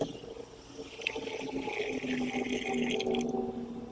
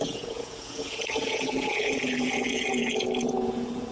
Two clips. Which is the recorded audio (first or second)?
first